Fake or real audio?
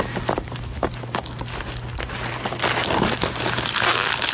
real